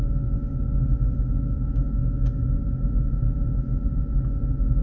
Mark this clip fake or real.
real